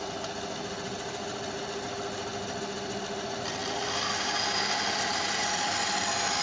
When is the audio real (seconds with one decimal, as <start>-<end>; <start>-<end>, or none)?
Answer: 0.0-6.4